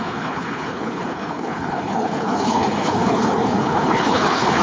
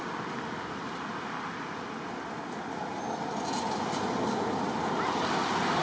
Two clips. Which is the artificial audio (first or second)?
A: first